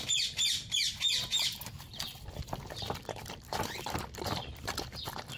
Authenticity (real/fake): fake